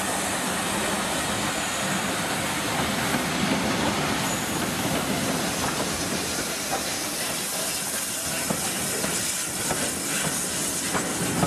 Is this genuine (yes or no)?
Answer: yes